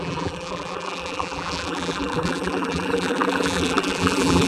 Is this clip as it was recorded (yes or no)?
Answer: no